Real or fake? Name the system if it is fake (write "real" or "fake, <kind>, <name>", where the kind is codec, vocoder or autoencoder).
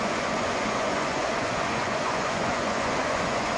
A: fake, vocoder, Vocos